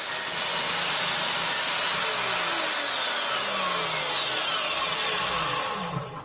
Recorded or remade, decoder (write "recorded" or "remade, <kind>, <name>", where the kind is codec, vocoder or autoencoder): recorded